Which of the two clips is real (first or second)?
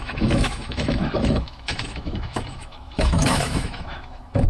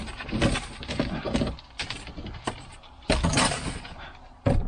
second